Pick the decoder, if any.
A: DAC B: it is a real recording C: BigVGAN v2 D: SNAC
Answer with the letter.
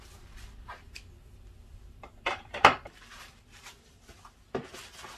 C